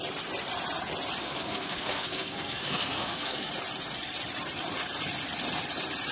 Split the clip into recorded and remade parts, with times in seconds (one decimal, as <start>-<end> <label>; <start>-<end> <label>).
0.0-1.2 recorded; 1.2-3.5 remade; 3.5-6.1 recorded